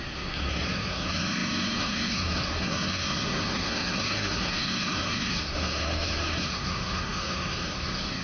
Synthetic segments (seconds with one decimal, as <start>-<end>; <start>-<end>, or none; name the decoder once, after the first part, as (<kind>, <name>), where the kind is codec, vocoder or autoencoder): 0.0-8.2 (codec, SNAC)